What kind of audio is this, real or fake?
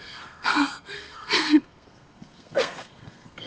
fake